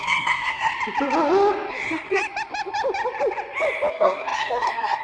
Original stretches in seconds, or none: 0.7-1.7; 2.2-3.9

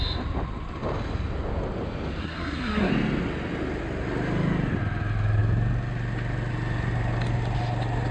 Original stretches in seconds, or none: 0.0-2.2; 2.9-8.1

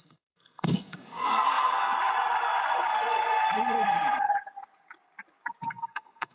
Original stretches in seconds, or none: 1.9-5.7

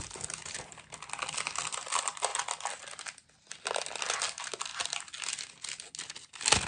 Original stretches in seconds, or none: 0.0-6.7

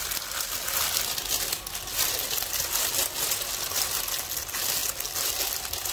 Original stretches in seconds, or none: 0.0-5.9

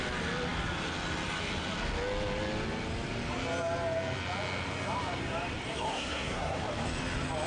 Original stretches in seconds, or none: 0.0-5.9; 6.6-7.5

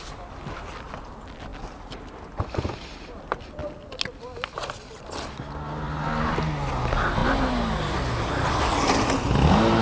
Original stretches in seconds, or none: 0.0-9.8